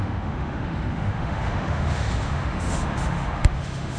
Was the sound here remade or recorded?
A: remade